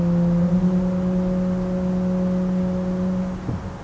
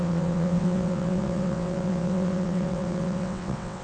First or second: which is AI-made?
second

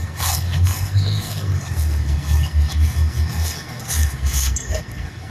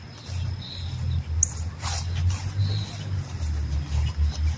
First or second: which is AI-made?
first